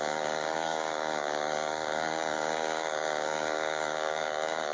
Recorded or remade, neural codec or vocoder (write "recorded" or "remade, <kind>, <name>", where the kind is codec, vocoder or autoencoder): remade, codec, DAC